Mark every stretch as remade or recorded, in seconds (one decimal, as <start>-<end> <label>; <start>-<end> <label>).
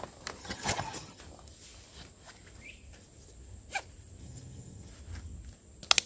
0.0-0.4 recorded; 0.4-1.2 remade; 1.2-4.2 recorded; 4.2-4.9 remade; 4.9-6.1 recorded